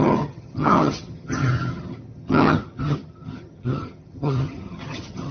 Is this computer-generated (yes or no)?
yes